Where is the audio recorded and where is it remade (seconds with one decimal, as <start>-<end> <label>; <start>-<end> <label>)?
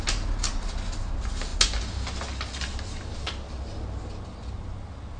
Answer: 0.0-5.2 recorded